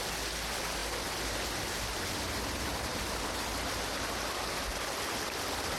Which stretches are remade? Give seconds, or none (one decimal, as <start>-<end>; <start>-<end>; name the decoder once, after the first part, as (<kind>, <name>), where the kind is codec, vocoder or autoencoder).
none